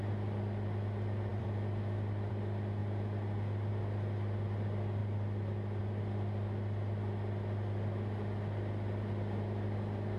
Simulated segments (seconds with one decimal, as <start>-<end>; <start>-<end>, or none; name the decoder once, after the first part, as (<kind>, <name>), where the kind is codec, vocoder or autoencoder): 1.3-2.3 (vocoder, BigVGAN v2)